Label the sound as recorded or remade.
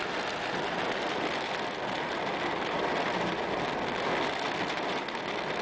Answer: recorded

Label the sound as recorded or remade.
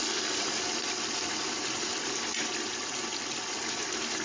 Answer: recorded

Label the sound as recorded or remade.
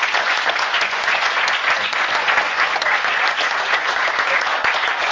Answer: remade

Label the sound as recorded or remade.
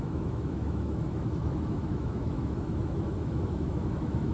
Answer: remade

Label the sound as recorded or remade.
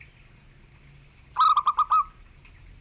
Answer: recorded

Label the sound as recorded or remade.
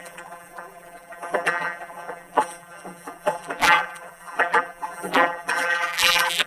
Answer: remade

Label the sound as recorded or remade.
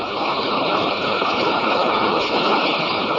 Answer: remade